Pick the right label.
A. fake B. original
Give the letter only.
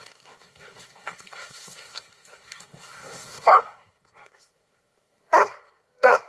A